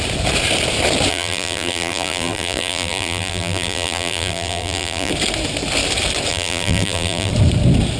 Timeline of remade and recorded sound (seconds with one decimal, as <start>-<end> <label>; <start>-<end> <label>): 0.0-1.1 recorded; 1.1-5.1 remade; 5.1-6.3 recorded; 6.3-7.3 remade; 7.3-8.0 recorded